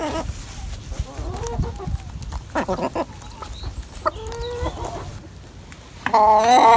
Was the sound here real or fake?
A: real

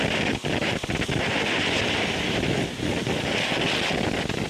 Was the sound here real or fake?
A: real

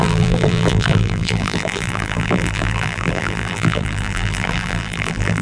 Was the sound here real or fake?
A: fake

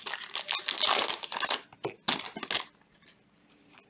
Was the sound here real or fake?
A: real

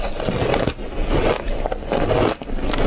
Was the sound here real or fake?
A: real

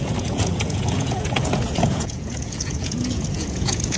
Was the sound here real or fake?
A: fake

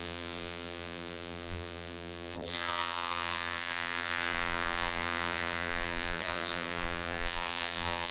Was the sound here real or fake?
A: fake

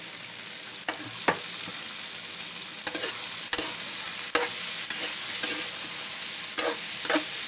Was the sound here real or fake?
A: real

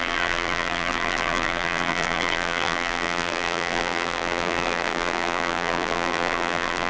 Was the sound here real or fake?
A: fake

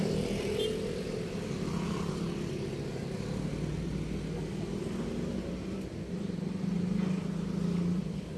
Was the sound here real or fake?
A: real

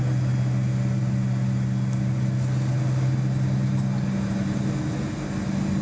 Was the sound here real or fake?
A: real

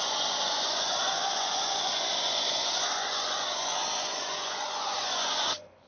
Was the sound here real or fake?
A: fake